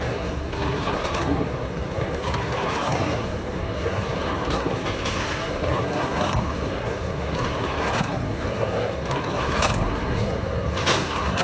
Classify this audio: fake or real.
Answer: fake